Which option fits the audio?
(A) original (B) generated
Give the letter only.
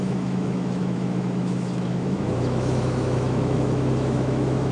B